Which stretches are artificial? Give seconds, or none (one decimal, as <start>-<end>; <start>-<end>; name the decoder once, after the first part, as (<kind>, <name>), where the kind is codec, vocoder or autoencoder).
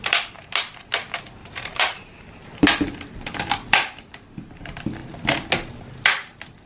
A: 1.4-2.5 (vocoder, BigVGAN v2)